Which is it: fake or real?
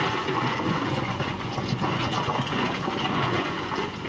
fake